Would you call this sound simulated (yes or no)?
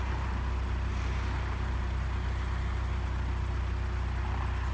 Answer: no